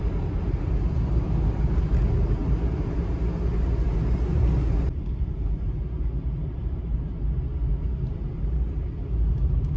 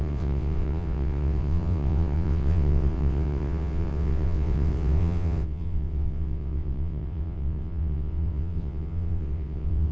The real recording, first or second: first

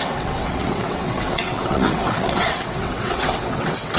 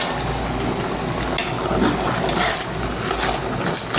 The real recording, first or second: second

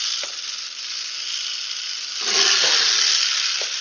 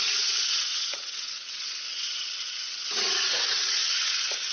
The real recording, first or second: first